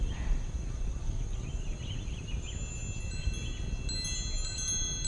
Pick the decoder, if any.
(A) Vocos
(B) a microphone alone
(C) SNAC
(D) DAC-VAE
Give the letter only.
B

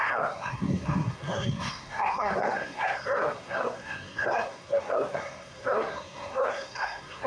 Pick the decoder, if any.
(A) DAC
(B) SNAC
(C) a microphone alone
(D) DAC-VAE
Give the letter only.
B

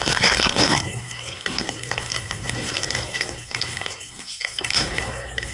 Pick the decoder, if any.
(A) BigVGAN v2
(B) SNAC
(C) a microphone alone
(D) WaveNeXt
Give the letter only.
B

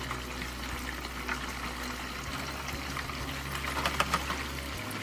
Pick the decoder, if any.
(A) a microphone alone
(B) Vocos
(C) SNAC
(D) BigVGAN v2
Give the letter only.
A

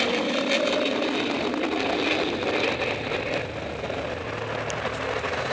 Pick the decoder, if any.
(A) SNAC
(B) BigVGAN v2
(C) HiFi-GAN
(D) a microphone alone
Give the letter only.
D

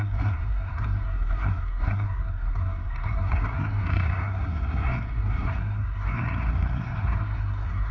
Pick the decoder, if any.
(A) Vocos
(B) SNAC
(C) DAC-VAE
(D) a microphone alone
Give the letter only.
B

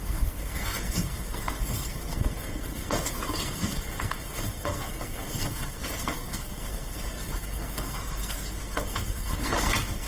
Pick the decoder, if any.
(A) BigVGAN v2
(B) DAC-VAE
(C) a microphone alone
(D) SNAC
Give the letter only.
D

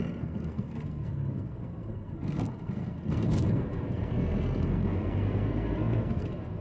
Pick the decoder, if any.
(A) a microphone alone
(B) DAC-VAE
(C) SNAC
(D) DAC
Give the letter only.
C